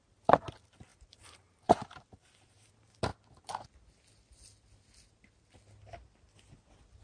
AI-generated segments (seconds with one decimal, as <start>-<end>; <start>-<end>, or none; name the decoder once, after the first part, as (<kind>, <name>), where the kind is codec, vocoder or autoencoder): 0.9-2.7 (vocoder, BigVGAN v2)